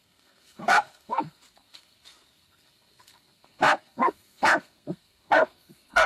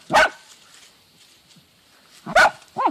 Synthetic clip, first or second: first